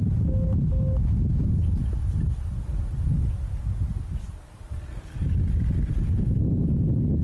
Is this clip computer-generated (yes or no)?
no